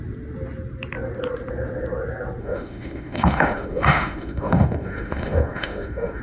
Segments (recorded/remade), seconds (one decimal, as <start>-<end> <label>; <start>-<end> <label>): 0.0-2.4 recorded; 2.4-6.2 remade